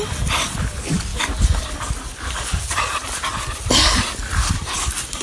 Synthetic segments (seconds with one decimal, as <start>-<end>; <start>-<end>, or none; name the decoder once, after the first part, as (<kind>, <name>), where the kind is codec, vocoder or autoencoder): none